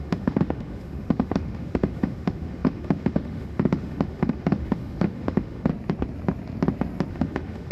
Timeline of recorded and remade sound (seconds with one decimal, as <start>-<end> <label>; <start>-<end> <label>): 0.0-5.7 remade; 5.7-7.1 recorded; 7.1-7.7 remade